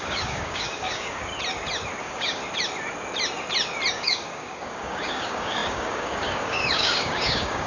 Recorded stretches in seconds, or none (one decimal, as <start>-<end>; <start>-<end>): 1.3-2.0; 2.4-3.9